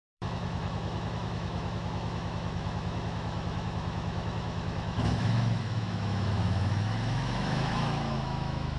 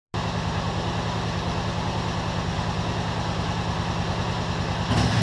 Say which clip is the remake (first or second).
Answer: first